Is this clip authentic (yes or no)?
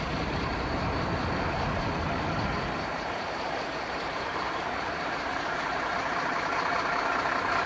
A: no